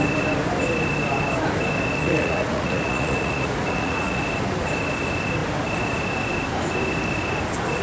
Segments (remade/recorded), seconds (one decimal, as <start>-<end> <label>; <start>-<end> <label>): 0.0-2.0 recorded; 2.0-4.2 remade; 4.2-7.8 recorded

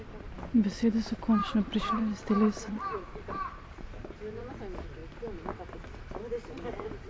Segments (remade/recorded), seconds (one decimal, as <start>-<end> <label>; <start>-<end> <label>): 0.0-1.4 recorded; 1.4-4.6 remade; 4.6-7.1 recorded